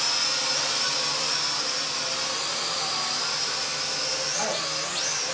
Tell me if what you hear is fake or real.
real